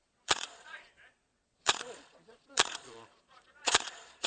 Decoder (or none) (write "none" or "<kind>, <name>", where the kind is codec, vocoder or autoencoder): vocoder, Vocos